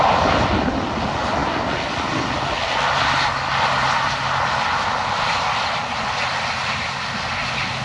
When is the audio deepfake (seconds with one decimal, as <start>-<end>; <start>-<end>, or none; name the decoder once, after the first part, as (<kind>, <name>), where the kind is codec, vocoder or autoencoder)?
none